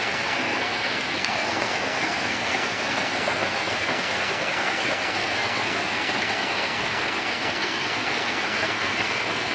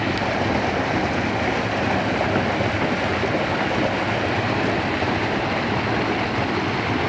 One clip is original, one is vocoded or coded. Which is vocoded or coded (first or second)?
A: first